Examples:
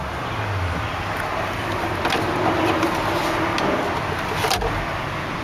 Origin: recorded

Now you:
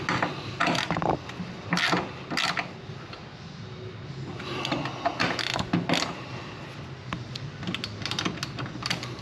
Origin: recorded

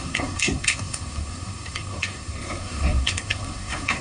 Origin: remade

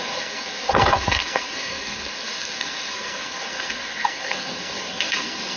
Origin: remade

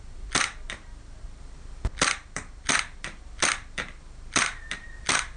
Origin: remade